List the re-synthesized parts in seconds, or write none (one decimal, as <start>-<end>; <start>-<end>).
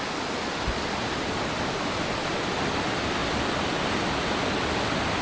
none